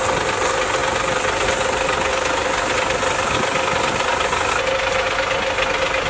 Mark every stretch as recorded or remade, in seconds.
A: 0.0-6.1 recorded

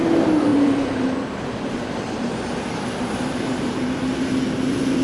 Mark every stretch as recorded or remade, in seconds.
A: 0.0-5.0 remade

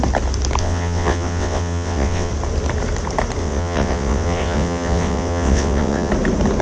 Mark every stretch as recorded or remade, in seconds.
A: 0.0-0.6 recorded; 0.6-2.3 remade; 2.3-3.4 recorded; 3.4-6.1 remade; 6.1-6.6 recorded